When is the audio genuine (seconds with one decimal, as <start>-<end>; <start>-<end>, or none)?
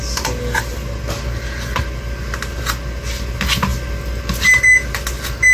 0.0-5.5